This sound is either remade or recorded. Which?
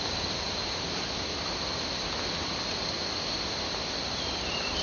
recorded